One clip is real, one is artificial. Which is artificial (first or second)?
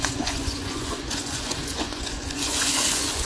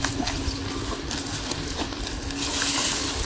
first